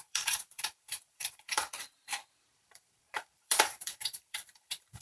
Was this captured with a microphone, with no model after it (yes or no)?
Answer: no